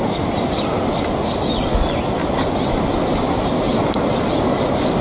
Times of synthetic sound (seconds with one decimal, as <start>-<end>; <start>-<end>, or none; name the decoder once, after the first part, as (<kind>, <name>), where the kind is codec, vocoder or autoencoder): 3.1-4.2 (vocoder, BigVGAN v2)